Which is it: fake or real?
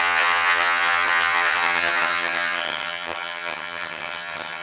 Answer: fake